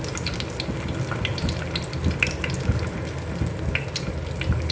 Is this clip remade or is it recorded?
recorded